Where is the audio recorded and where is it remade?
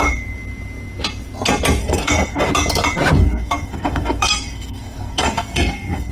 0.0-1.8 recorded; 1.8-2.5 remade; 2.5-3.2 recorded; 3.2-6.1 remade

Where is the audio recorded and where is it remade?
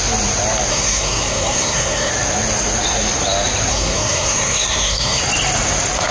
0.0-0.7 recorded; 0.7-2.1 remade; 2.1-3.7 recorded; 3.7-5.2 remade; 5.2-6.1 recorded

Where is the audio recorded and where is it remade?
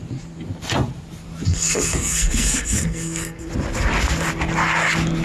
0.0-1.5 recorded; 1.5-3.5 remade; 3.5-5.2 recorded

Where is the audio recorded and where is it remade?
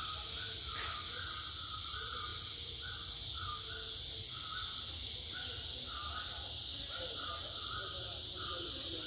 0.0-9.1 recorded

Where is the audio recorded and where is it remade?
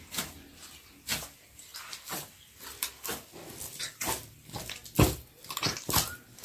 0.0-6.4 recorded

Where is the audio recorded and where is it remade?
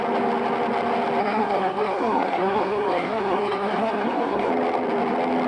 0.0-1.2 recorded; 1.2-4.5 remade; 4.5-5.5 recorded